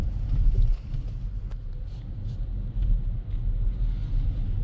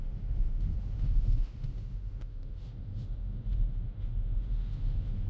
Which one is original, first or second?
first